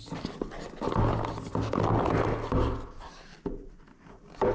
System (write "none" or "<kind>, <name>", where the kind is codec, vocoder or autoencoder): none